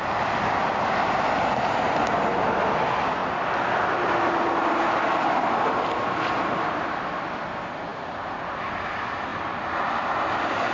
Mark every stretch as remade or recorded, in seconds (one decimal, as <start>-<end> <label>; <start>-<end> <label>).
0.0-10.7 recorded